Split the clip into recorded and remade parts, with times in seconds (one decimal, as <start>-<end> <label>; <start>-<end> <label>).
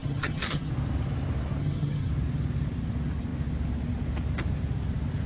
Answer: 0.0-0.7 remade; 0.7-1.6 recorded; 1.6-2.1 remade; 2.1-5.3 recorded